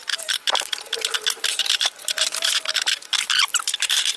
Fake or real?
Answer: fake